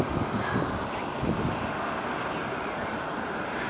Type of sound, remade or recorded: recorded